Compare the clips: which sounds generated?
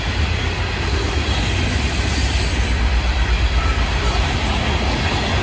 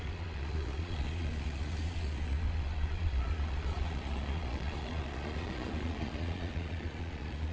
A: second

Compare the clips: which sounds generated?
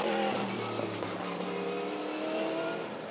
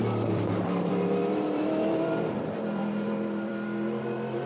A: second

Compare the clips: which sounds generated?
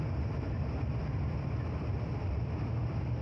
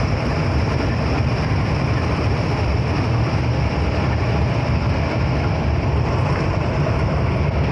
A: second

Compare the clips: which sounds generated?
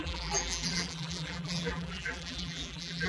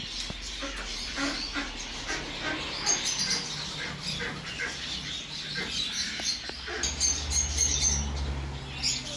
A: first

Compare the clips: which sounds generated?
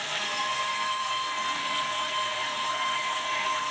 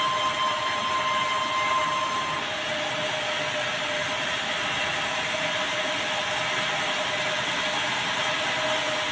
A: first